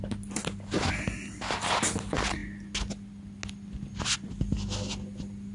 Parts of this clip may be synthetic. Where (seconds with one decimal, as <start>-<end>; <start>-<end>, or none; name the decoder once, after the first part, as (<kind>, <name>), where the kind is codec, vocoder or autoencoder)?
none